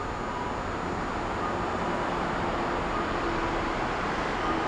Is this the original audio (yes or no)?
yes